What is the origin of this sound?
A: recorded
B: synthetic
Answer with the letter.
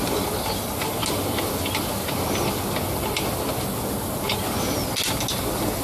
A